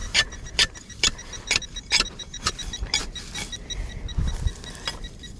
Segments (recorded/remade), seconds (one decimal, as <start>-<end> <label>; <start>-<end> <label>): 0.0-2.5 remade; 2.5-5.4 recorded